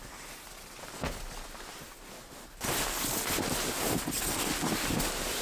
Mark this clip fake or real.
real